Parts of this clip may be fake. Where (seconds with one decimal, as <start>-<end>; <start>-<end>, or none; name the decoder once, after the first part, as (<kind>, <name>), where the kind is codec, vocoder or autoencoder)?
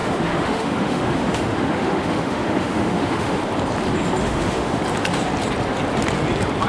0.0-3.4 (autoencoder, DAC-VAE); 4.2-4.8